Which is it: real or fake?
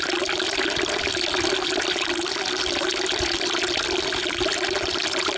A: real